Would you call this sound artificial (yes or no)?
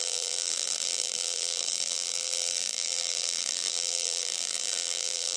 yes